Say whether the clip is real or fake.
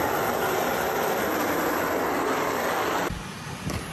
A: real